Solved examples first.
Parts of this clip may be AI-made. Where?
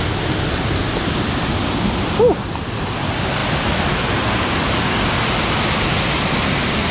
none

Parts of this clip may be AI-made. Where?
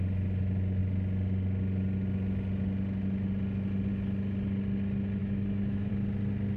5.2-5.9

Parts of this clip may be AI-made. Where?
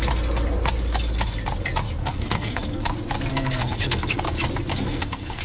2.0-2.9; 3.3-4.2; 4.7-5.4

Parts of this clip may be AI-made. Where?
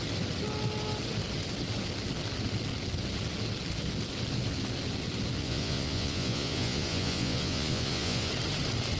5.4-8.3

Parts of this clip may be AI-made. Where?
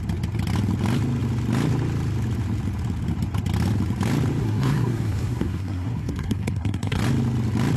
4.4-7.0